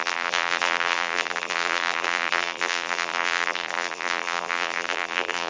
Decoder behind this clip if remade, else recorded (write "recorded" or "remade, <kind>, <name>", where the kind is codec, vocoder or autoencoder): remade, vocoder, BigVGAN v2